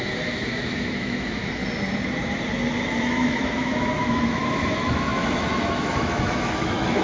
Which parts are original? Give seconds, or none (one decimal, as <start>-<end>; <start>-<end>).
1.6-3.0